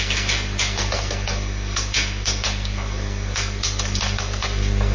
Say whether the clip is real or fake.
fake